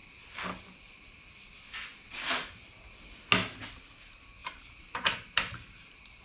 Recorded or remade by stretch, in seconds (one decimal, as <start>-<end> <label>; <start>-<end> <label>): 0.0-4.4 recorded; 4.4-6.2 remade